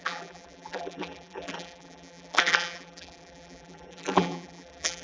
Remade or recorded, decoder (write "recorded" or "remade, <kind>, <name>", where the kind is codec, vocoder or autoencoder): remade, vocoder, BigVGAN v2